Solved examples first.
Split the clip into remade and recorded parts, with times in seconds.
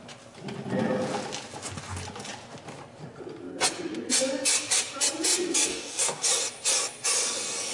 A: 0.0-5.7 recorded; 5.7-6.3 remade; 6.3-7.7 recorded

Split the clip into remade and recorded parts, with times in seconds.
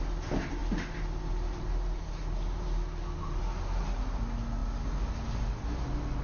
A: 0.0-6.2 recorded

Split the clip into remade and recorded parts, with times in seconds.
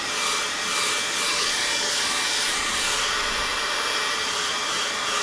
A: 0.0-1.3 recorded; 1.3-1.9 remade; 1.9-5.2 recorded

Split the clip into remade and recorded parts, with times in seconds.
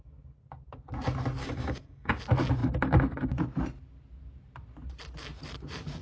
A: 0.0-1.4 recorded; 1.4-2.1 remade; 2.1-6.0 recorded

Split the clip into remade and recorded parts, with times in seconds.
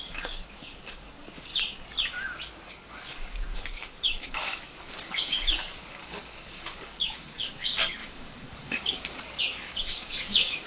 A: 0.0-1.5 remade; 1.5-2.7 recorded; 2.7-10.7 remade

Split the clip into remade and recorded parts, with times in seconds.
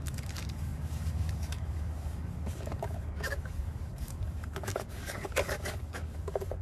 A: 0.0-6.6 remade